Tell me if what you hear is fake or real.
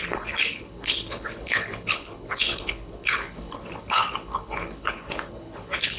fake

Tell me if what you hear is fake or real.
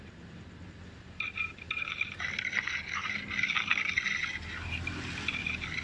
real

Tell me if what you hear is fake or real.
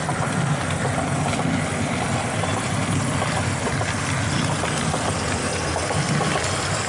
real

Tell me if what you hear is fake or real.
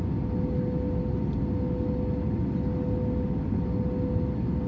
real